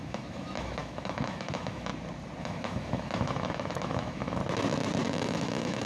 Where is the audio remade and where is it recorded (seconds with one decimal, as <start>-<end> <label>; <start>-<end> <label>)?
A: 0.0-1.9 remade; 1.9-2.4 recorded; 2.4-4.4 remade; 4.4-5.1 recorded; 5.1-5.9 remade